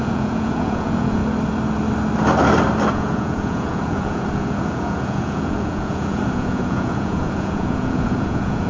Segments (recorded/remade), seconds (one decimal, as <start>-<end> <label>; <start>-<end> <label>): 0.0-1.2 remade; 1.2-2.9 recorded; 2.9-8.7 remade